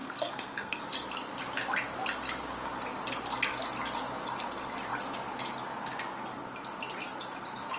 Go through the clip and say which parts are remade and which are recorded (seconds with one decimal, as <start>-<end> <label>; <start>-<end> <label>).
0.0-0.8 remade; 0.8-7.8 recorded